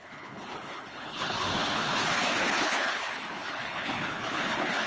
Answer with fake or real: fake